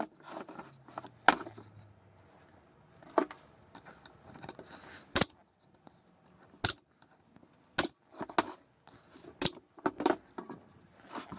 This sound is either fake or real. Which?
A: real